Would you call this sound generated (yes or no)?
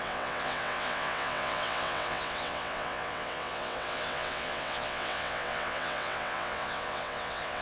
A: yes